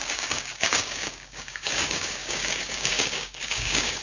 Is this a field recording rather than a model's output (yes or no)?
no